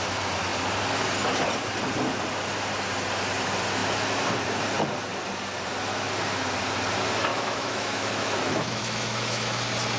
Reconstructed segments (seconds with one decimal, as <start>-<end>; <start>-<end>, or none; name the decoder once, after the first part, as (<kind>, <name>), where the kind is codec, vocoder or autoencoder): 7.3-9.6 (autoencoder, DAC-VAE)